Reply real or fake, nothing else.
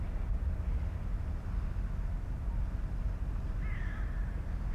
real